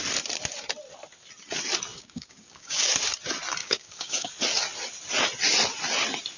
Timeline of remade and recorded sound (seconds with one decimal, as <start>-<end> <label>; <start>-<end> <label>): 0.0-1.9 recorded; 1.9-2.9 remade; 2.9-3.6 recorded; 3.6-4.3 remade; 4.3-6.4 recorded